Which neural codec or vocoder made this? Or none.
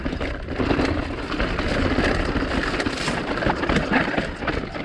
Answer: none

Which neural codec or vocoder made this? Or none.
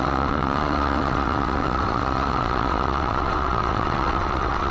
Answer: vocoder, WaveNeXt